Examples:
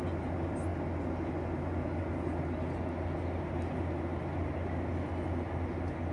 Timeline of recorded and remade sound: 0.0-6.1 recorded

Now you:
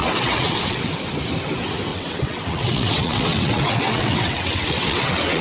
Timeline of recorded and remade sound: 0.0-1.0 remade; 1.0-1.9 recorded; 1.9-5.4 remade

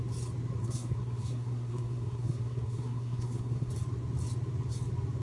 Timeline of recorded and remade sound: 0.0-0.6 recorded; 0.6-3.7 remade; 3.7-5.2 recorded

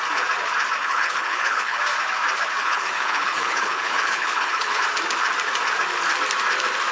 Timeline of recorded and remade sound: 0.0-0.8 recorded; 0.8-1.8 remade; 1.8-2.6 recorded; 2.6-4.8 remade; 4.8-6.9 recorded

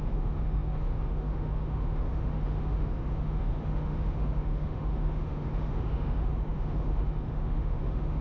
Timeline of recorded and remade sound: 0.0-8.2 remade

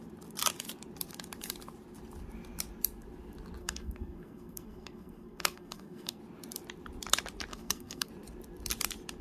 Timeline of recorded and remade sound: 0.0-3.6 recorded; 3.6-6.2 remade; 6.2-7.5 recorded; 7.5-8.1 remade; 8.1-9.2 recorded

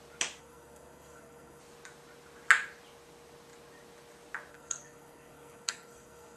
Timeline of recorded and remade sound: 0.0-0.4 recorded; 0.4-1.6 remade; 1.6-4.5 recorded; 4.5-6.4 remade

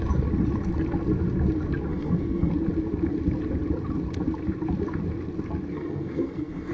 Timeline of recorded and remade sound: 0.0-1.9 recorded; 1.9-2.5 remade; 2.5-5.7 recorded; 5.7-6.7 remade